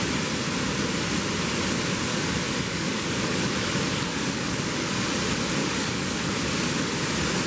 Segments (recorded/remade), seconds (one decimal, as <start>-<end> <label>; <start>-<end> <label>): 0.0-2.1 recorded; 2.1-4.9 remade; 4.9-5.6 recorded; 5.6-6.2 remade; 6.2-7.5 recorded